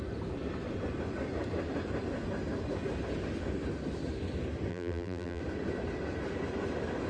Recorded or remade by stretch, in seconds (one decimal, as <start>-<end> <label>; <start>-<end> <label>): 0.0-4.7 recorded; 4.7-5.4 remade; 5.4-7.1 recorded